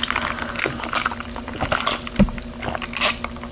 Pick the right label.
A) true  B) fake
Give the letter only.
A